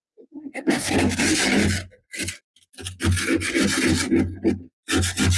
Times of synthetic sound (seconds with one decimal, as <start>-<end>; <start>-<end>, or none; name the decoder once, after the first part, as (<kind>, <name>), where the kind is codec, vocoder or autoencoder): 0.0-0.9 (codec, SNAC)

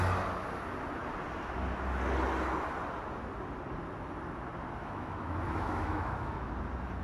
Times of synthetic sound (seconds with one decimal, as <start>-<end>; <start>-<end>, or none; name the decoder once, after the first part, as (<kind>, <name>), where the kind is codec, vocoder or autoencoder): 4.8-6.5 (autoencoder, DAC-VAE)